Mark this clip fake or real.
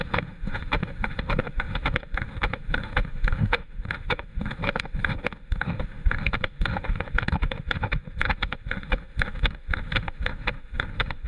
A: fake